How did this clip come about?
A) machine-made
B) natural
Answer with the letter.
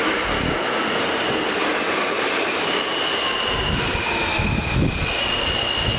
B